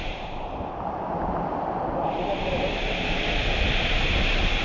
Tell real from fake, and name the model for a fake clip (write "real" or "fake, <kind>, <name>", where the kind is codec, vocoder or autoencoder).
real